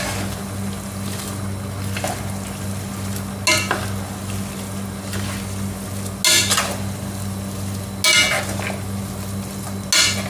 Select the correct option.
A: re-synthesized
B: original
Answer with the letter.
B